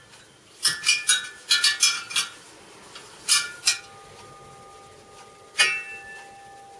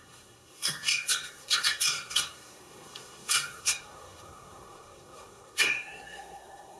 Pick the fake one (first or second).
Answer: second